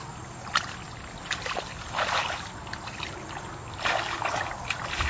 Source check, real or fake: real